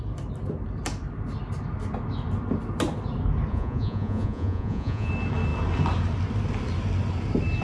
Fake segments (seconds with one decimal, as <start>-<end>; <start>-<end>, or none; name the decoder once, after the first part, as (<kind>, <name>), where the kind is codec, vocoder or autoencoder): 3.5-5.1 (vocoder, Vocos)